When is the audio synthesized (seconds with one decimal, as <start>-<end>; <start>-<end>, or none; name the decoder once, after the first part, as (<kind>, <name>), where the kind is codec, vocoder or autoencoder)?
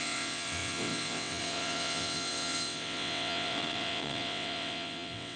0.0-5.4 (vocoder, WaveNeXt)